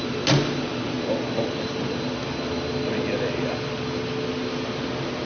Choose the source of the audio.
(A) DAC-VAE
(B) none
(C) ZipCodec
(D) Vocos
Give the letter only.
B